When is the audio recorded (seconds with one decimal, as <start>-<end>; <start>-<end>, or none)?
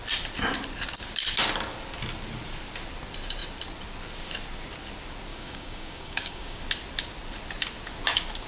0.0-5.3; 6.6-8.5